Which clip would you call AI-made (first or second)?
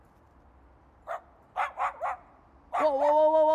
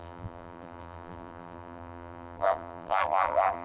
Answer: second